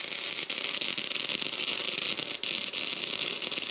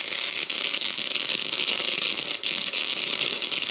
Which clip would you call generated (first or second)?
second